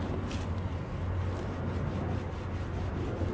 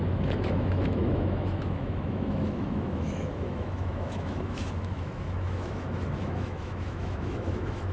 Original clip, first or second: first